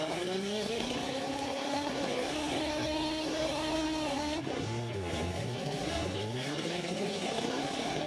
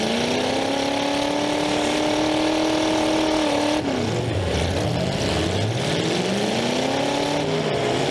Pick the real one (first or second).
second